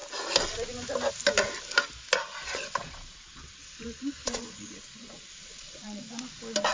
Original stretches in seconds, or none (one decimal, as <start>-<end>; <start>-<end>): 0.0-2.3; 6.1-6.7